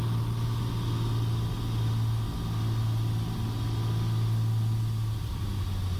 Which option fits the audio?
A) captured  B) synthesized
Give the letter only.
A